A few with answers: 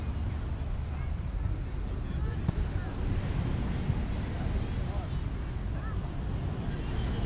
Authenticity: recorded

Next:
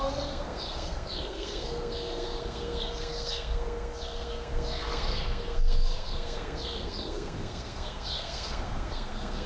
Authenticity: remade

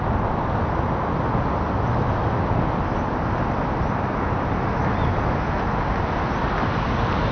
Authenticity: recorded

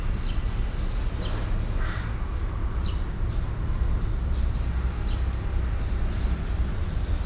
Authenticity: recorded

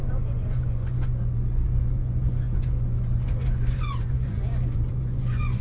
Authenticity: remade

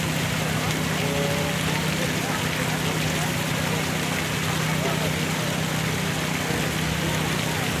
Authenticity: recorded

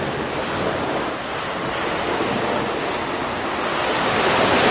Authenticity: recorded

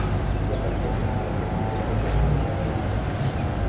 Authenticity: recorded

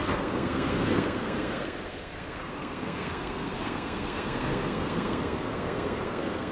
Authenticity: remade